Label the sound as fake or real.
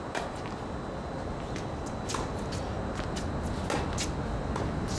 real